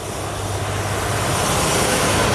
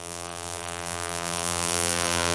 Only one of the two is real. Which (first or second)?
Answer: first